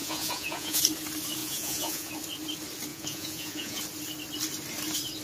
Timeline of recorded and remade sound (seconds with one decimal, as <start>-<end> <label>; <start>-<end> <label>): 0.0-0.8 remade; 0.8-1.4 recorded; 1.4-2.1 remade; 2.1-2.9 recorded; 2.9-3.8 remade; 3.8-5.2 recorded